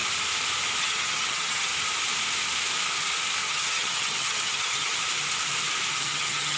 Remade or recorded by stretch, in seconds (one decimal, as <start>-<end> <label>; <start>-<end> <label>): 0.0-0.8 recorded; 0.8-1.7 remade; 1.7-3.4 recorded; 3.4-5.0 remade; 5.0-5.9 recorded; 5.9-6.6 remade